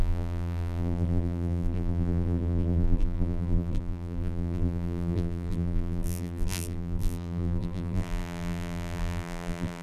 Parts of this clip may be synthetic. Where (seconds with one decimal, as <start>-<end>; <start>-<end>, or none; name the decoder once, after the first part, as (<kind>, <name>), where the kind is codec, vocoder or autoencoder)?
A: 0.0-9.8 (vocoder, BigVGAN v2)